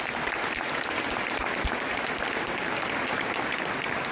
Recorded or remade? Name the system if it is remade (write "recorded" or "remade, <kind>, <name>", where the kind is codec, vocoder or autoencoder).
recorded